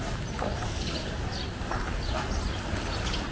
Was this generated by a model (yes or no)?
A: no